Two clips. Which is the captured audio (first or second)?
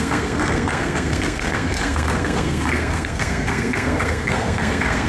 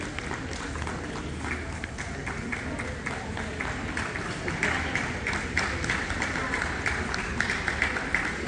second